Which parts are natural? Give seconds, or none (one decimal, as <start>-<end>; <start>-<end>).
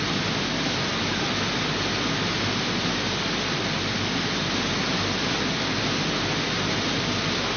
0.0-7.6